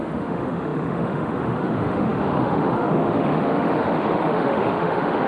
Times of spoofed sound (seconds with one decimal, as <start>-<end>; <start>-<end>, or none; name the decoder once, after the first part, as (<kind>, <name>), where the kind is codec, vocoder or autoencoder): 0.0-5.3 (autoencoder, DAC-VAE)